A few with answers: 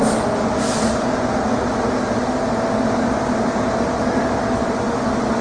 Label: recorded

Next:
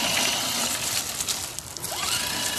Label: recorded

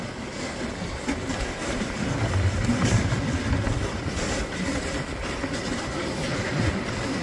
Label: recorded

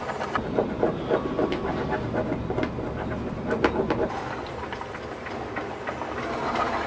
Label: recorded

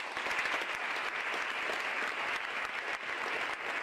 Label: recorded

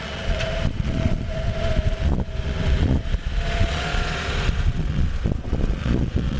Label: remade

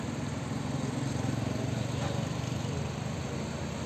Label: recorded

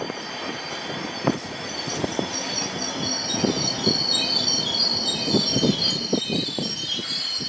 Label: recorded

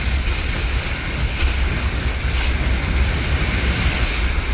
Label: recorded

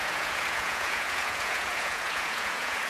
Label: remade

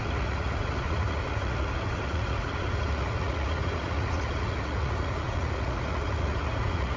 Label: remade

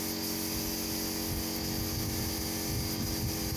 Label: recorded